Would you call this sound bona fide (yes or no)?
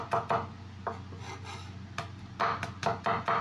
yes